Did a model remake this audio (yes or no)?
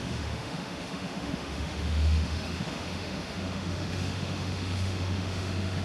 yes